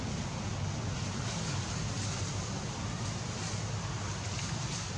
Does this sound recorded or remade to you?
recorded